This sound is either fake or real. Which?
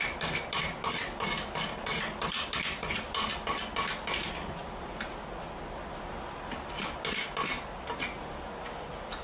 real